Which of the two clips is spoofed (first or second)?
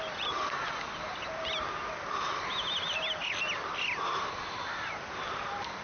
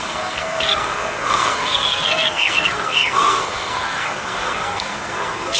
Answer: second